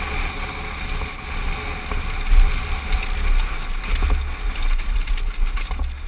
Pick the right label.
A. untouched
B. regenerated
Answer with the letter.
A